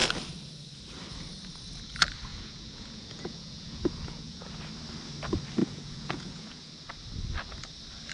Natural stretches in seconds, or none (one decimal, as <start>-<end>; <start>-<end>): 0.0-2.3; 4.5-5.6; 6.7-8.1

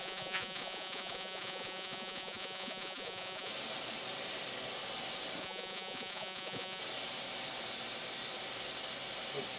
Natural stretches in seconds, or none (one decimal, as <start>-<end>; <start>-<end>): 3.5-5.4; 6.8-9.6

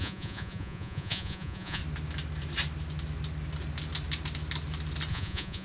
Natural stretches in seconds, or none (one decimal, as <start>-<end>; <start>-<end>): 1.8-5.1

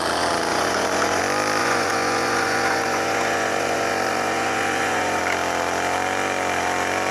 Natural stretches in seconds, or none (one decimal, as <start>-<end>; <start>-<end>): 0.0-0.5; 1.2-1.6; 5.2-7.1

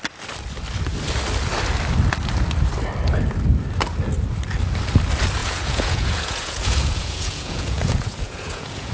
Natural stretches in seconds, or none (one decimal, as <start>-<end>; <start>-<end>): 0.0-5.4

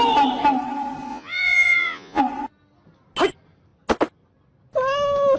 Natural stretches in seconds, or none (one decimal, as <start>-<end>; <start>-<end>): 0.0-1.1; 2.2-5.4